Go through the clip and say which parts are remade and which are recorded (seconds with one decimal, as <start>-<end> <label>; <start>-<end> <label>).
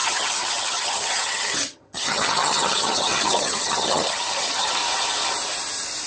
0.0-4.8 remade; 4.8-6.1 recorded